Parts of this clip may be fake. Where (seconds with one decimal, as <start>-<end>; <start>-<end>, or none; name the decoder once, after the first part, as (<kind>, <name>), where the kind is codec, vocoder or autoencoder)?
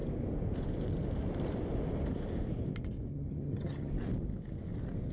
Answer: 3.1-3.9 (vocoder, HiFi-GAN)